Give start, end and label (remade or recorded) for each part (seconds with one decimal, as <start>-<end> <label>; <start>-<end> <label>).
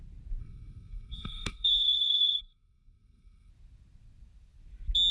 0.0-0.4 recorded; 0.4-3.5 remade; 3.5-5.1 recorded